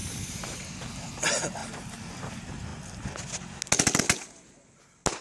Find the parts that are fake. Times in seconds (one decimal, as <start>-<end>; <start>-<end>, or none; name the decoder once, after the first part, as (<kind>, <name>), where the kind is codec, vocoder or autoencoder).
0.0-0.7 (vocoder, BigVGAN v2); 1.6-2.3